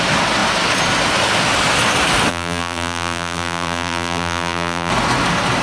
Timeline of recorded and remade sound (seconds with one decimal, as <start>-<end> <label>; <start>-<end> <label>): 0.0-2.3 recorded; 2.3-4.9 remade; 4.9-5.6 recorded